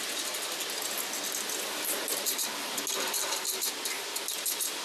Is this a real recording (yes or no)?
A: yes